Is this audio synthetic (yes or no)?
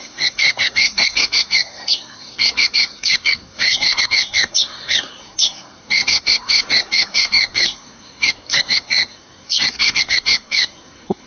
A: yes